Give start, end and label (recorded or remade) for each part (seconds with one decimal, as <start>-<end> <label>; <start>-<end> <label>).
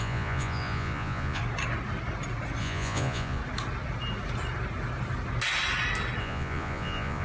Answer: 0.0-1.4 remade; 1.4-2.6 recorded; 2.6-3.4 remade; 3.4-6.2 recorded; 6.2-7.2 remade